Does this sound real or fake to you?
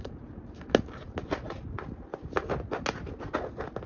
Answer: real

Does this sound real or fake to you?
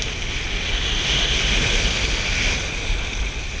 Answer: real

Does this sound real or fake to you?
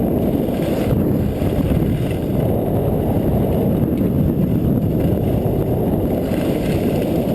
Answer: real